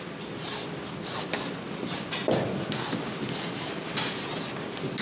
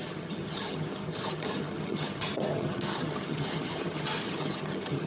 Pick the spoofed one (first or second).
second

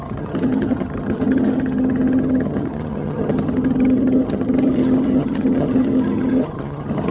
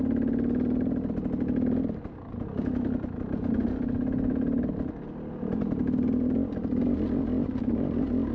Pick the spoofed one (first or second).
first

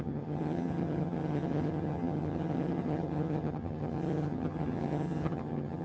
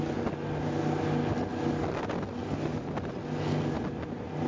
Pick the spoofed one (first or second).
first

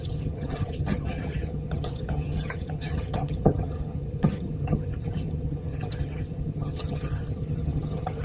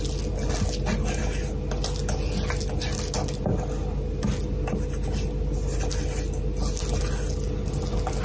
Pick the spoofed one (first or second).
first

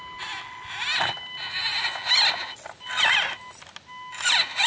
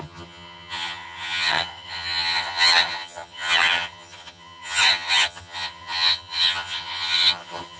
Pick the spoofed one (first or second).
second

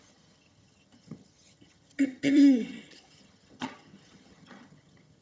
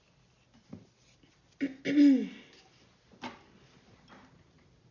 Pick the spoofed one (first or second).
first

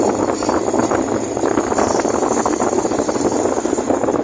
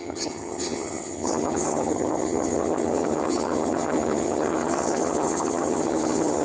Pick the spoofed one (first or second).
second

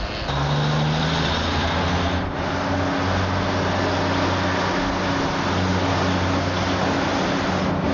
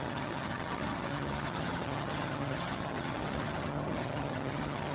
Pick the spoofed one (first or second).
second